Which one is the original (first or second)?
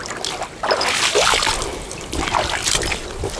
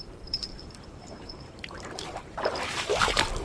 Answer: first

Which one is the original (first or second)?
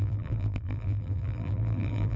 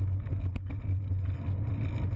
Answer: second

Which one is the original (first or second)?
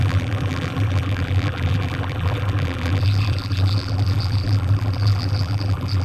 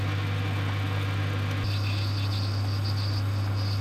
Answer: second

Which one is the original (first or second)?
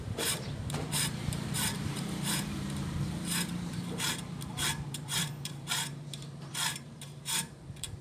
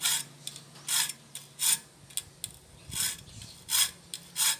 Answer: second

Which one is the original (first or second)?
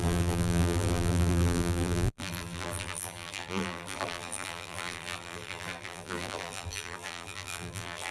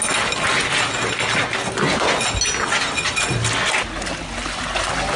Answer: second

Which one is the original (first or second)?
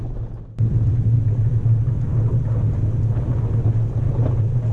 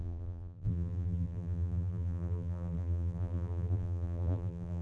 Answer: first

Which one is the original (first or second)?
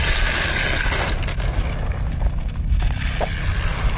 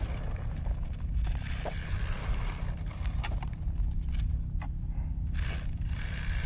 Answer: first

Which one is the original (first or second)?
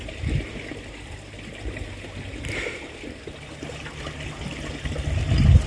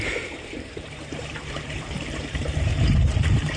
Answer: first